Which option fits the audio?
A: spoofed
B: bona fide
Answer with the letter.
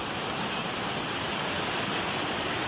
B